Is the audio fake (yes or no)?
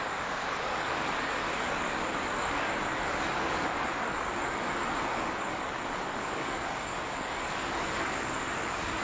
yes